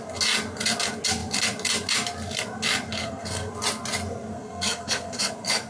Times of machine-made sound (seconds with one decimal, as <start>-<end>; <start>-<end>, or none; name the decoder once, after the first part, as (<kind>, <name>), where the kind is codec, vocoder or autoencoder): 2.9-3.5 (codec, SNAC); 4.3-5.3